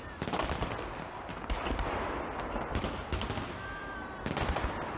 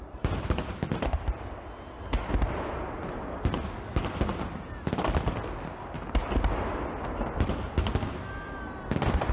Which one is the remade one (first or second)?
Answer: first